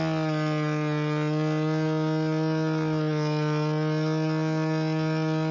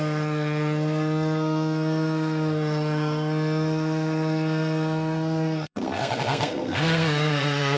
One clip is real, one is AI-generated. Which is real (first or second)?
first